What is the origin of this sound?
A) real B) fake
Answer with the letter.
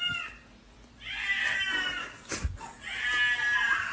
A